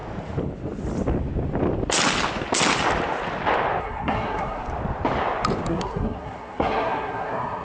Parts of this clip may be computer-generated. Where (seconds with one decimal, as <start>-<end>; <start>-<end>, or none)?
3.8-4.7; 5.7-7.6